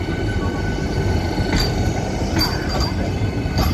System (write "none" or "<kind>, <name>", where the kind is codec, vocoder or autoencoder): none